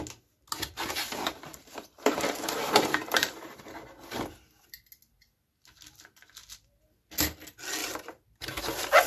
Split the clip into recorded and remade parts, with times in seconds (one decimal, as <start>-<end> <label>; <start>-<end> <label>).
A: 0.0-1.5 recorded; 1.5-3.6 remade; 3.6-7.8 recorded; 7.8-8.6 remade; 8.6-9.1 recorded